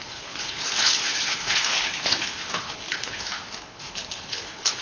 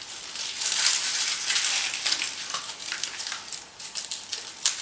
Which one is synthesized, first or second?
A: first